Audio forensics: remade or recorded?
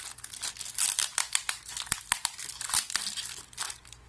recorded